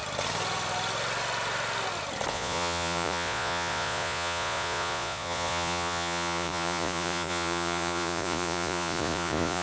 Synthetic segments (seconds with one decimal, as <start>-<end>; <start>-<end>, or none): 2.3-9.6